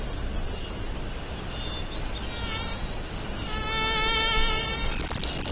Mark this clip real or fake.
real